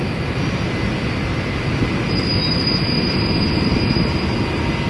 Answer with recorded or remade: recorded